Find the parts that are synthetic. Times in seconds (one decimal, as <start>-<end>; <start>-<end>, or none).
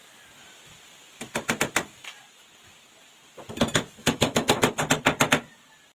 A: 4.0-4.7